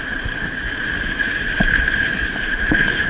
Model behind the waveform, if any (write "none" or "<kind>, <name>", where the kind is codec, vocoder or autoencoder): vocoder, BigVGAN v2